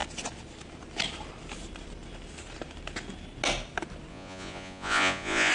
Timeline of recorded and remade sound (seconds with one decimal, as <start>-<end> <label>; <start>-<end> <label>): 0.0-4.1 recorded; 4.1-5.5 remade